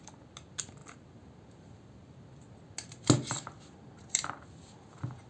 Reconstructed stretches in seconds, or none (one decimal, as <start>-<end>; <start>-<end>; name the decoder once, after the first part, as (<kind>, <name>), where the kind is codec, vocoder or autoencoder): none